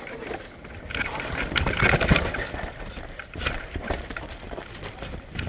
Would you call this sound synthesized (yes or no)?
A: no